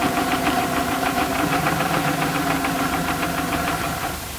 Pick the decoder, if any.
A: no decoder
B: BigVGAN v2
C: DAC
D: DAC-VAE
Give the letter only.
B